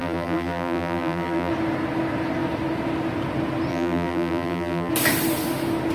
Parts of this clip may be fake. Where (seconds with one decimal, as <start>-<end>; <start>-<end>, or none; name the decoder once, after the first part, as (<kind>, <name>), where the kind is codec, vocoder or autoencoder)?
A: 0.0-1.5 (vocoder, BigVGAN v2); 3.7-4.9